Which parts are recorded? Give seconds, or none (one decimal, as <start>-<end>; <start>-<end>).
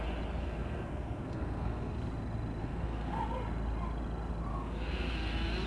0.0-0.4; 1.9-2.6; 3.2-4.5; 5.1-5.7